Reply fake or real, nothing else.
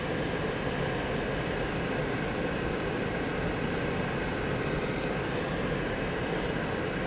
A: real